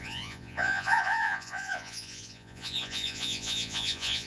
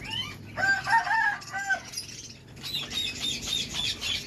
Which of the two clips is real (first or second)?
second